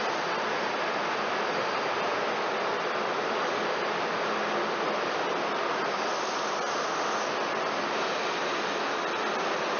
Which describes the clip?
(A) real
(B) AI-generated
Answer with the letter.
A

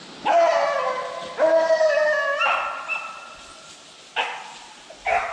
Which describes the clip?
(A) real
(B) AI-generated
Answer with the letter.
A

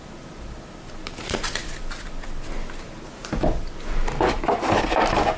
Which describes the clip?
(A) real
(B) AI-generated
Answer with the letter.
A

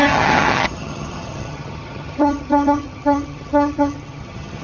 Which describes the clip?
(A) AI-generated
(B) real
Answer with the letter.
A